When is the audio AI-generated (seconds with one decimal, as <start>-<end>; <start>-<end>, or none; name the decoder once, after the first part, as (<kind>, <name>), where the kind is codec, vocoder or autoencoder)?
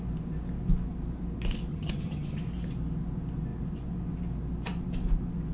1.7-2.4 (vocoder, HiFi-GAN)